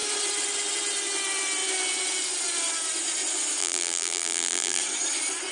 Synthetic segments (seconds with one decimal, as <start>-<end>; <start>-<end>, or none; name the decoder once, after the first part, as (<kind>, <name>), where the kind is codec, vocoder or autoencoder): 3.6-4.8 (vocoder, BigVGAN v2)